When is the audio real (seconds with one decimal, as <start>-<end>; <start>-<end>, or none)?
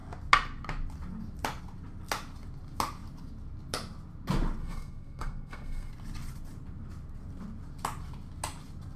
0.0-4.6; 5.9-9.0